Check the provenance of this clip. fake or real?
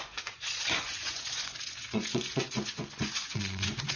fake